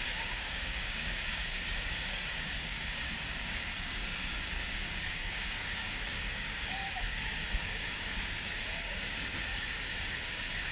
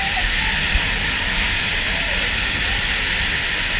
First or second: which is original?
second